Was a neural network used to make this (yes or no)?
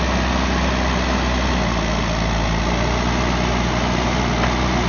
no